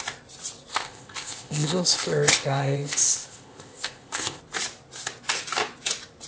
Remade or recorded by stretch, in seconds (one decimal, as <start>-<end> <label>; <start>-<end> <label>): 0.0-0.7 recorded; 0.7-4.4 remade; 4.4-6.3 recorded